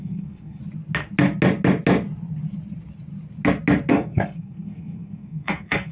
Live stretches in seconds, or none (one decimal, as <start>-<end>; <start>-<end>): 0.6-3.9